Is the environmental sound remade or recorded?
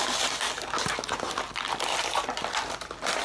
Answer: recorded